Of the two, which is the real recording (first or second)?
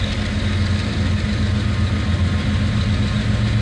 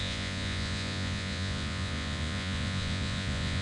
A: first